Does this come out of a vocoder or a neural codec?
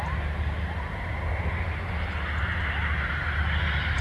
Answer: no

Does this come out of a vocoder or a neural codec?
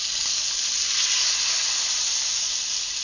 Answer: no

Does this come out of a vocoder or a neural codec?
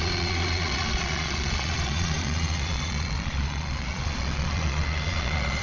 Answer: yes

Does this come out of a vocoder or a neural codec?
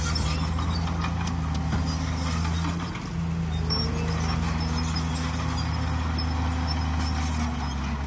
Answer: no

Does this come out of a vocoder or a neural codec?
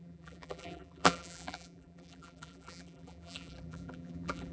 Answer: yes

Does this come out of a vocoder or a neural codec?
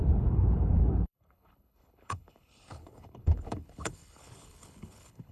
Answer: yes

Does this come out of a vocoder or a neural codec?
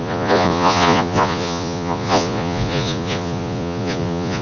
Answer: yes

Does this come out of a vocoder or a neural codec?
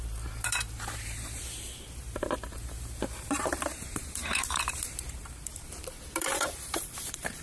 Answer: yes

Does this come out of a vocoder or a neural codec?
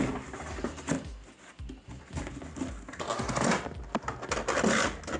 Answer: no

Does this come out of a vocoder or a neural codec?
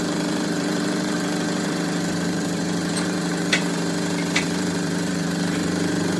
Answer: yes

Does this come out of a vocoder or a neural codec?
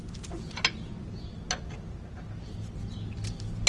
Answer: no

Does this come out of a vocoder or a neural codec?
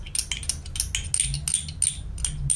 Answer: no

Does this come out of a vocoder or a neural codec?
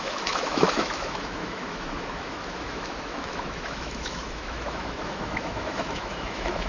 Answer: yes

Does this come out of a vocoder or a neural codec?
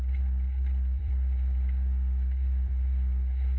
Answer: yes